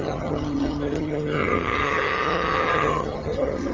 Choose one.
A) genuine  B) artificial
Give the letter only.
B